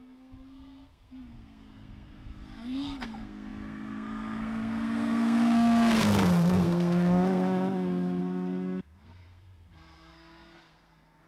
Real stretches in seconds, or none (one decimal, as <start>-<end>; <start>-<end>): none